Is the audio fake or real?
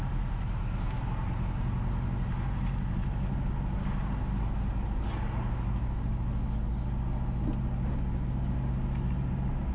real